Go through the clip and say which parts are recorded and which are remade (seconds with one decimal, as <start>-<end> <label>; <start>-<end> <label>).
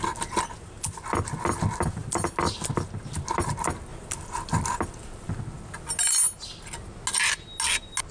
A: 0.0-8.1 recorded